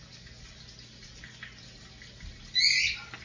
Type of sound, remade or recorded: recorded